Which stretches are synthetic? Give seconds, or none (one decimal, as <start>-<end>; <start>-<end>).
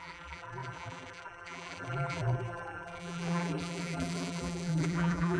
0.0-5.4